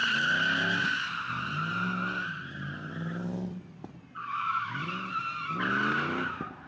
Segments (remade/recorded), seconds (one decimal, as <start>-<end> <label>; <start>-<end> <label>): 0.0-4.2 recorded; 4.2-4.7 remade; 4.7-6.7 recorded